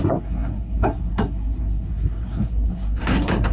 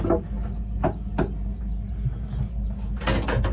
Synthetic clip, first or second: first